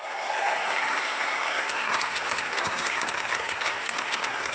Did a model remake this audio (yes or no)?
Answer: yes